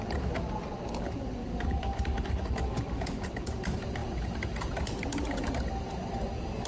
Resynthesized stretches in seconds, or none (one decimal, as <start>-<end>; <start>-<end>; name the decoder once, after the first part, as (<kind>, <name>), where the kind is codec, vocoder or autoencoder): none